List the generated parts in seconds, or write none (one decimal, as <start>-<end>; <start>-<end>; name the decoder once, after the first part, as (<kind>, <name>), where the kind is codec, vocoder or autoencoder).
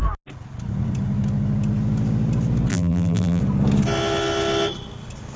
2.7-3.4 (vocoder, BigVGAN v2)